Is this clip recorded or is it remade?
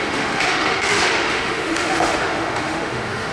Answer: remade